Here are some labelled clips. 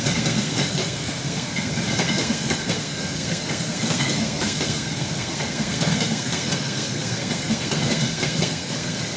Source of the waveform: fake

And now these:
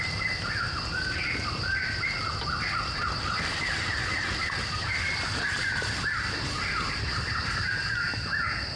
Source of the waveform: real